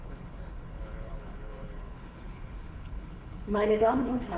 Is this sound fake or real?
fake